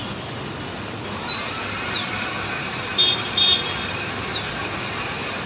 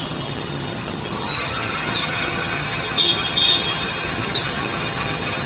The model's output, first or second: second